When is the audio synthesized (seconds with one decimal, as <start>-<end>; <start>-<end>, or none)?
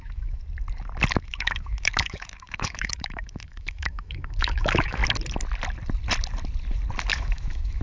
0.0-0.4; 1.1-5.0; 7.1-7.8